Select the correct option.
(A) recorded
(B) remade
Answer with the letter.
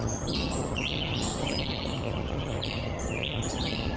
B